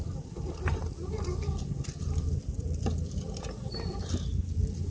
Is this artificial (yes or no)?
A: no